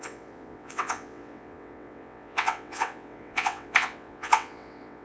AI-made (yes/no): yes